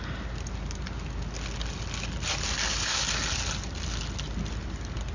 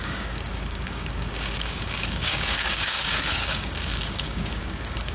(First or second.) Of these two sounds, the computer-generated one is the second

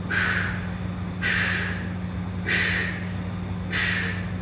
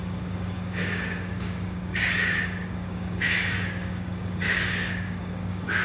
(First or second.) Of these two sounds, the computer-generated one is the second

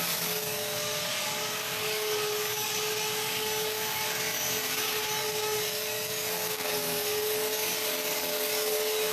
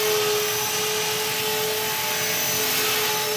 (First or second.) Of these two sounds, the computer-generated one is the first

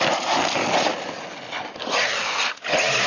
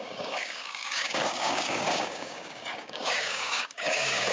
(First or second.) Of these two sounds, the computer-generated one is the second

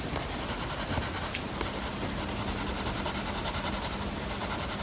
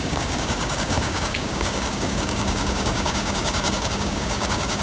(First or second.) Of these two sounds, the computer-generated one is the second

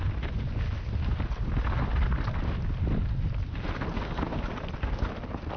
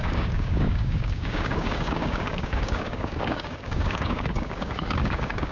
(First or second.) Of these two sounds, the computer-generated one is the second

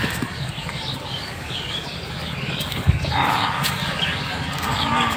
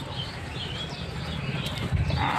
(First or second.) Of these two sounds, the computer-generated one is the first